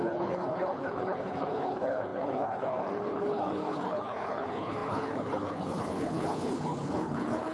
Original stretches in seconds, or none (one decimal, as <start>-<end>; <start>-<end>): none